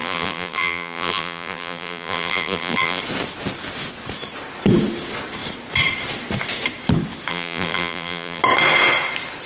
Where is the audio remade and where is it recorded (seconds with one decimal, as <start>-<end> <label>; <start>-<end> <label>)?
0.0-3.0 remade; 3.0-7.3 recorded; 7.3-8.4 remade; 8.4-9.5 recorded